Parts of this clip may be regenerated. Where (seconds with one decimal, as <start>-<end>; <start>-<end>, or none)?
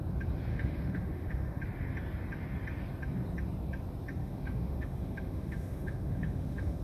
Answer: 0.5-1.6; 4.2-6.8